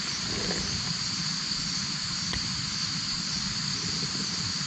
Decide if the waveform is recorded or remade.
recorded